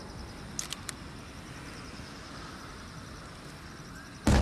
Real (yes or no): yes